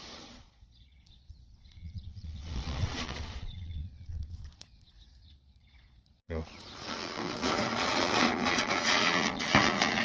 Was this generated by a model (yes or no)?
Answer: yes